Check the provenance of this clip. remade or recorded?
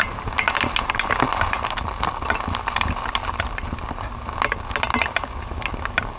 recorded